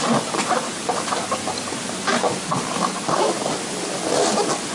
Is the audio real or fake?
real